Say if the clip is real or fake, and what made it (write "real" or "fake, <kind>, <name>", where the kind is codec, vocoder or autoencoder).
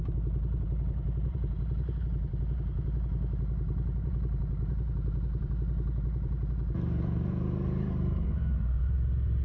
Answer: fake, vocoder, BigVGAN v2